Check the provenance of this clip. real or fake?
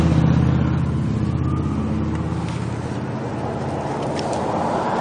real